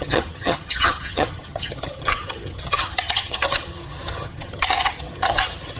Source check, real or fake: fake